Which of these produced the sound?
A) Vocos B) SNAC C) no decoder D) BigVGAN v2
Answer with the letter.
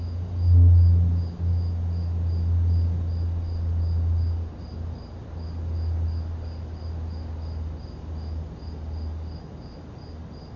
C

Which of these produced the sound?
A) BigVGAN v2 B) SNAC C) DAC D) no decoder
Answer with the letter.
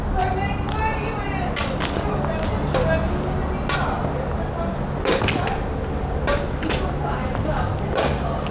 D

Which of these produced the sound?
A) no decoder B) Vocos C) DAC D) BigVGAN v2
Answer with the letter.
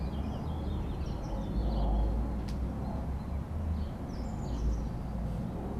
A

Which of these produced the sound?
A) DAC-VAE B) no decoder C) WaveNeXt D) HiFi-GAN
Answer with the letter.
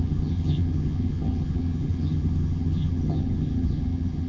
D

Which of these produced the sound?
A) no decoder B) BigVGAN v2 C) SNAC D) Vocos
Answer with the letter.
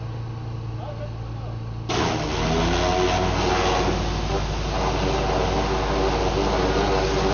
A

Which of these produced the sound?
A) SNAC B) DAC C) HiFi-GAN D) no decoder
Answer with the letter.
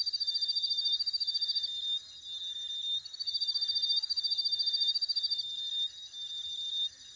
D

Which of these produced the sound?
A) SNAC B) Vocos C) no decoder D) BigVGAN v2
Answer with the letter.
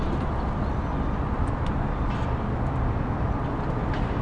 C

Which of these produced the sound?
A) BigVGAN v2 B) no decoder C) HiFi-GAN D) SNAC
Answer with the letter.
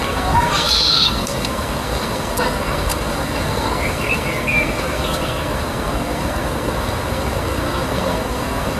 D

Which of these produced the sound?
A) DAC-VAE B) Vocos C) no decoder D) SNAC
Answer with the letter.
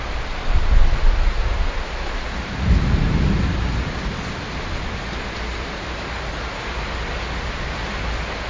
C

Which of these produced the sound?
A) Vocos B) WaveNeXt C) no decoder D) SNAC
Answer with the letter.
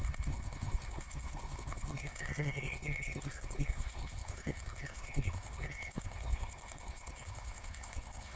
D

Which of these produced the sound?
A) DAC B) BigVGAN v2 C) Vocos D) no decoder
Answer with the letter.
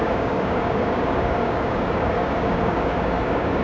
A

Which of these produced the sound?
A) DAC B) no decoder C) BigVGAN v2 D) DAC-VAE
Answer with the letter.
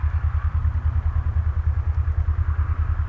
B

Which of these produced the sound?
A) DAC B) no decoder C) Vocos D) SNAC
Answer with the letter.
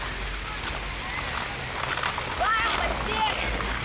B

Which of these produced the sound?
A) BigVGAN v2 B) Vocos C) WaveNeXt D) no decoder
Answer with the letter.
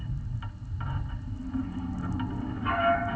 D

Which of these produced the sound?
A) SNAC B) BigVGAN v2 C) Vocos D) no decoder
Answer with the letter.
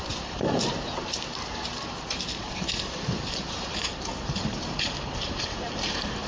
B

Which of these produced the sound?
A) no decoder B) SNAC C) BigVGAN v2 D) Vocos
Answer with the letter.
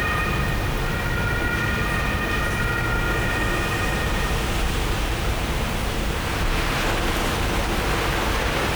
A